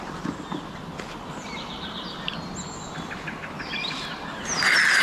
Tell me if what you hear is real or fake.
real